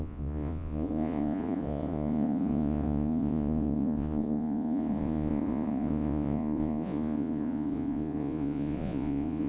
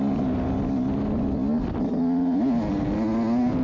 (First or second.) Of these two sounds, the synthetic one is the first